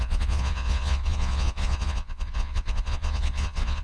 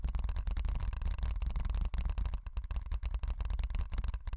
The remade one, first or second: first